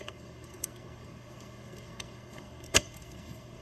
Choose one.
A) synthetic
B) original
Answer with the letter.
A